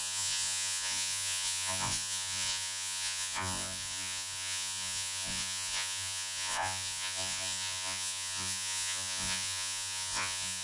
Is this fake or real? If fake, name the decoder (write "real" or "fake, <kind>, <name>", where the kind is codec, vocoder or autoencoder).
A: fake, vocoder, Vocos